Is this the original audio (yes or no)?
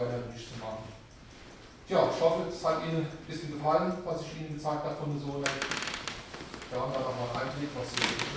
yes